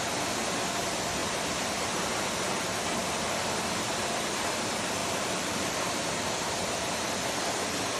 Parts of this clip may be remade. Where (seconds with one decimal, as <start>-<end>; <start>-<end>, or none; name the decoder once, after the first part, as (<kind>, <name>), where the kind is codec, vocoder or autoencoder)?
1.2-2.1 (vocoder, BigVGAN v2); 3.0-3.6; 5.0-6.0